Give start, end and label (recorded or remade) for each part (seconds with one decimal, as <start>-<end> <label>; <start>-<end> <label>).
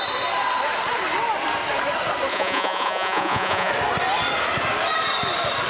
0.0-2.3 recorded; 2.3-3.7 remade; 3.7-5.7 recorded